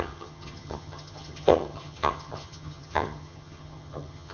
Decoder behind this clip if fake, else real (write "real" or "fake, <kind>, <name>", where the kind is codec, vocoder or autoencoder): fake, vocoder, HiFi-GAN